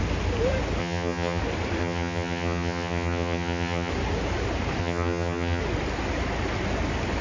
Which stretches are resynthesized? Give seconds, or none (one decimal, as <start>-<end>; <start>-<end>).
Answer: 0.8-1.4; 1.8-3.9; 4.8-5.6